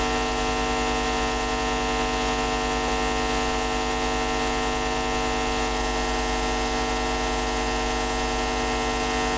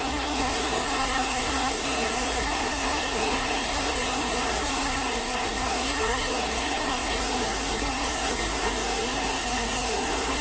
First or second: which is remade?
second